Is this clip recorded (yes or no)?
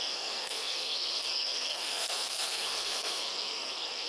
no